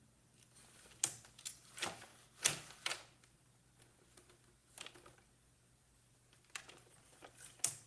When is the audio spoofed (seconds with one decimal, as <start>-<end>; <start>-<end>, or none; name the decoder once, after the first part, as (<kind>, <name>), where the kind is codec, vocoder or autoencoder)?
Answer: none